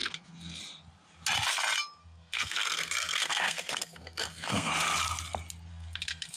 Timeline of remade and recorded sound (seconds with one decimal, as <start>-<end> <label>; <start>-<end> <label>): 0.0-0.6 remade; 0.6-2.0 recorded; 2.0-4.7 remade; 4.7-5.7 recorded; 5.7-6.4 remade